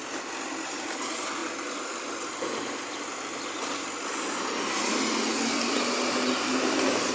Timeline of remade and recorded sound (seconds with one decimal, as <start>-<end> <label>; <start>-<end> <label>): 0.0-7.1 recorded